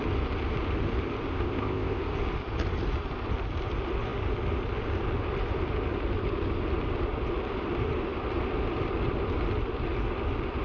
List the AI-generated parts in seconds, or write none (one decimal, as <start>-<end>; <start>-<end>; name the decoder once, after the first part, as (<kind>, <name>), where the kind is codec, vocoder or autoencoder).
1.3-2.0 (codec, ZipCodec)